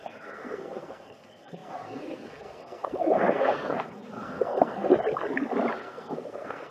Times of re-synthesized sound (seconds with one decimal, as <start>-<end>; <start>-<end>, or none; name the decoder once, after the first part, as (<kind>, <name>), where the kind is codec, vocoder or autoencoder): 0.0-4.9 (codec, SNAC); 5.8-6.7